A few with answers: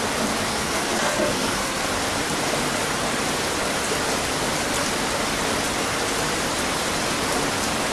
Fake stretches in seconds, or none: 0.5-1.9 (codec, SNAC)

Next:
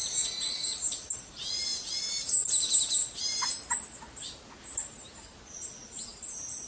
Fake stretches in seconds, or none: 6.1-6.7 (vocoder, BigVGAN v2)

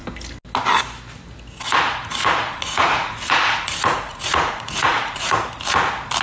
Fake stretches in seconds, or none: 2.2-5.5 (vocoder, Vocos)

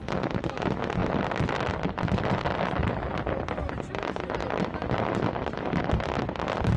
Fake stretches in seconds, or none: none

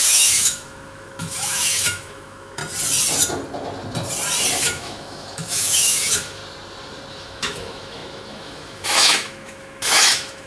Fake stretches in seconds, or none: 0.0-2.6 (autoencoder, DAC-VAE); 4.6-6.4; 7.1-10.5

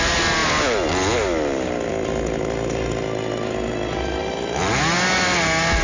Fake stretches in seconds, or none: none